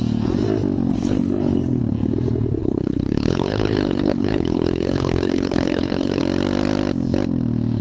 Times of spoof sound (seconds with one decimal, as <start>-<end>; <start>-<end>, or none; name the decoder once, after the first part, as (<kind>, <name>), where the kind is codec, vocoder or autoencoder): 0.9-1.8 (codec, HILCodec); 2.6-6.2